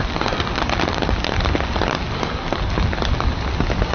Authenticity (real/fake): real